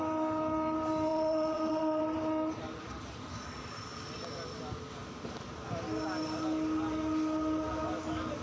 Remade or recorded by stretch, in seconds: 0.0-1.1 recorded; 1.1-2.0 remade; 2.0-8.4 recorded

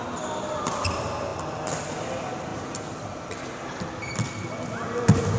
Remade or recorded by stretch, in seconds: 0.0-5.4 recorded

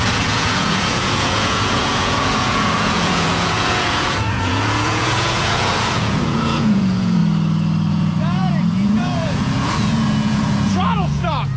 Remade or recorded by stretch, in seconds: 0.0-7.2 remade; 7.2-7.9 recorded; 7.9-11.6 remade

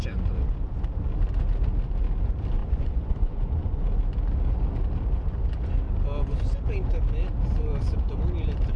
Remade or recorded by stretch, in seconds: 0.0-2.6 recorded; 2.6-3.8 remade; 3.8-8.8 recorded

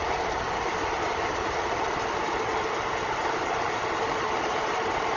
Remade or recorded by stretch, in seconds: 0.0-5.2 recorded

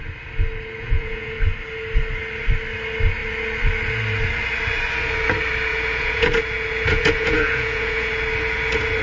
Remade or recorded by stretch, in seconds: 0.0-0.8 recorded; 0.8-1.4 remade; 1.4-5.7 recorded; 5.7-6.4 remade; 6.4-6.9 recorded; 6.9-8.1 remade; 8.1-9.0 recorded